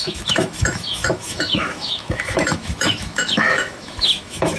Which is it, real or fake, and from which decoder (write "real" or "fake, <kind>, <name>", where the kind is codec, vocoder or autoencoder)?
fake, autoencoder, DAC-VAE